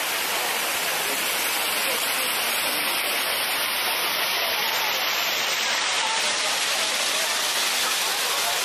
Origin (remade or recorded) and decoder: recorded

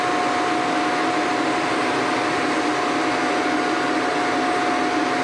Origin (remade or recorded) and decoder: recorded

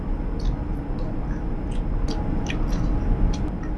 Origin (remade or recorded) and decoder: recorded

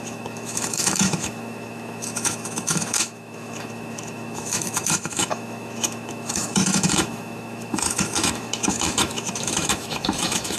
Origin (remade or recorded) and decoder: remade, autoencoder, DAC-VAE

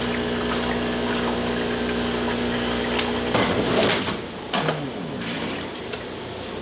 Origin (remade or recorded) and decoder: recorded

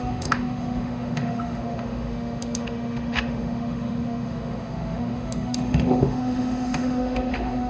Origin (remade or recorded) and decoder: remade, autoencoder, DAC-VAE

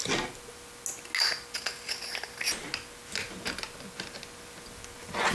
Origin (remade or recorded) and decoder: recorded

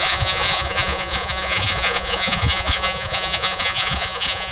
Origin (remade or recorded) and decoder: remade, vocoder, Vocos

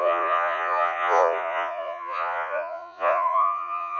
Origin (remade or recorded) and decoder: remade, vocoder, Vocos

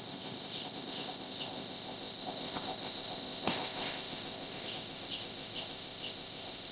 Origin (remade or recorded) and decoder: remade, codec, ZipCodec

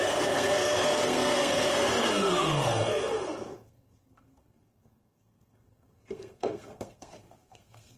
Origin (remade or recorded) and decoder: remade, codec, SNAC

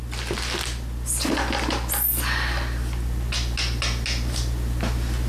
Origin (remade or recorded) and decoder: recorded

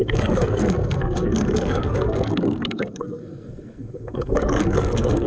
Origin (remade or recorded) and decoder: remade, codec, SNAC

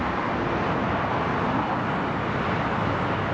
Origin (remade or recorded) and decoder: recorded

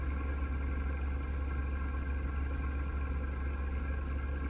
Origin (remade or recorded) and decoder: recorded